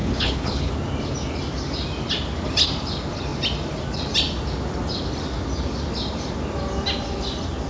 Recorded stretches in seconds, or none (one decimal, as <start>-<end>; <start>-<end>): 0.7-7.7